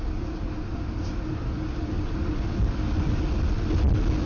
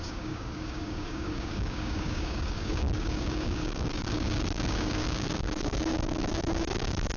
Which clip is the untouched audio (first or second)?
first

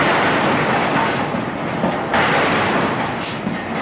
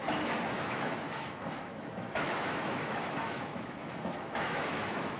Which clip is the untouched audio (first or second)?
first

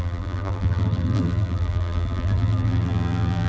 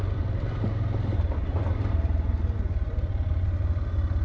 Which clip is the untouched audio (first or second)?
second